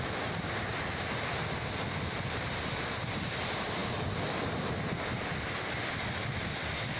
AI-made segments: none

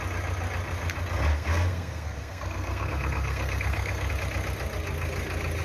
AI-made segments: 1.3-4.1 (codec, SNAC)

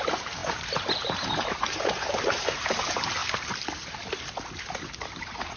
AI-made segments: 0.0-3.2 (vocoder, BigVGAN v2); 5.0-5.6

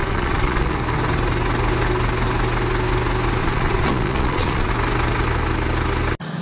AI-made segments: 0.0-0.8 (vocoder, Vocos); 3.4-4.7

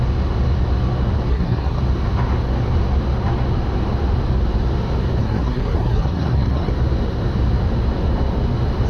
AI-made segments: 1.3-1.8 (codec, SNAC); 5.2-6.7

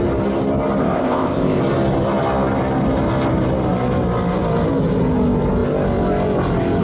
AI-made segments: 0.8-1.6 (codec, ZipCodec)